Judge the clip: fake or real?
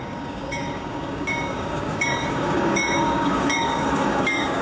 fake